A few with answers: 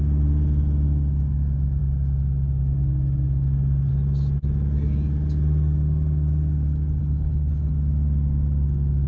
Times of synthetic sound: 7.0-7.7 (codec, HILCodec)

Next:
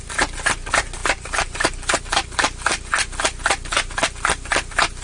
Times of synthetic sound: 1.0-2.0 (vocoder, BigVGAN v2)

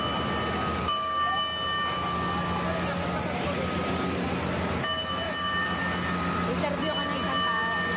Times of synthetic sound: 0.7-1.3 (codec, DAC)